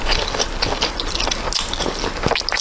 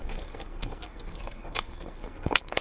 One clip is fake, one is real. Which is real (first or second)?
first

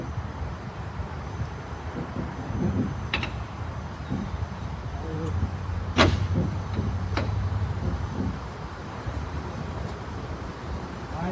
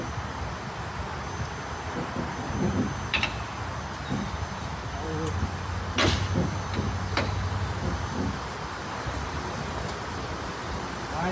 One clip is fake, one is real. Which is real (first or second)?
second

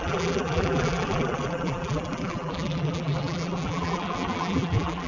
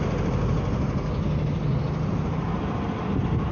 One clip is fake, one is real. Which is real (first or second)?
second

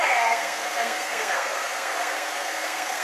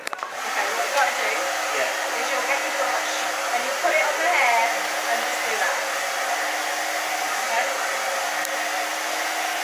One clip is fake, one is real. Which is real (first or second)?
second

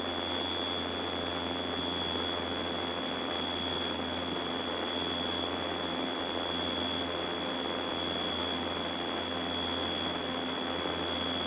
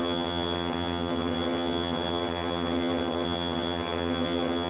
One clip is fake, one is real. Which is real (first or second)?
first